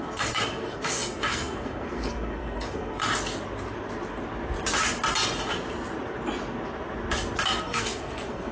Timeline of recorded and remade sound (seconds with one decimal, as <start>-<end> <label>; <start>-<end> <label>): 0.0-3.0 remade; 3.0-7.6 recorded; 7.6-8.5 remade